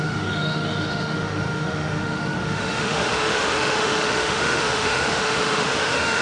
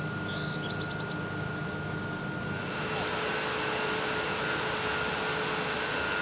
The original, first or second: second